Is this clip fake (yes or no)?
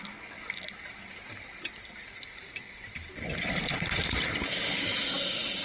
no